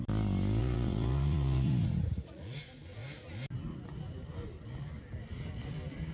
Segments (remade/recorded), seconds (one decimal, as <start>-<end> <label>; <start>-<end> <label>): 0.0-0.6 recorded; 0.6-2.6 remade; 2.6-6.1 recorded